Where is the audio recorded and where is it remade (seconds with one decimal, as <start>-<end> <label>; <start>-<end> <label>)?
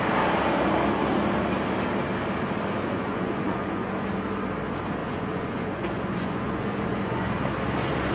0.0-2.8 recorded; 2.8-3.9 remade; 3.9-5.0 recorded; 5.0-8.1 remade